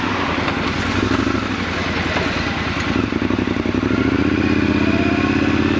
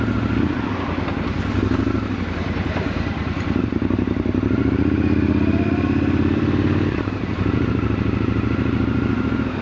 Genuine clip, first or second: first